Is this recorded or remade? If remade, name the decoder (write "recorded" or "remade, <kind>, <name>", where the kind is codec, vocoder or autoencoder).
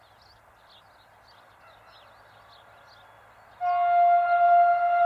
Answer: recorded